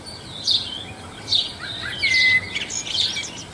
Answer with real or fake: fake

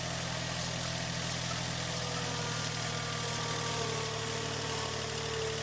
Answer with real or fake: real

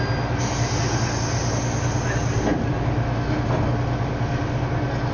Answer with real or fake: real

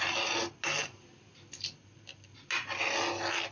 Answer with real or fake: real